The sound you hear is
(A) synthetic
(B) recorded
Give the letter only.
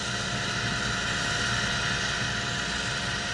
B